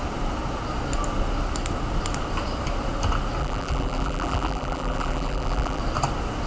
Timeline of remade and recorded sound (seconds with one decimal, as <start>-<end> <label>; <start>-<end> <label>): 0.0-3.4 recorded; 3.4-5.8 remade; 5.8-6.5 recorded